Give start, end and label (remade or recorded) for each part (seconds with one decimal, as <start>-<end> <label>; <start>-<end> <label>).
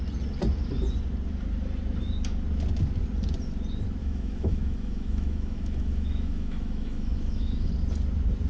0.0-4.0 recorded; 4.0-7.7 remade; 7.7-8.5 recorded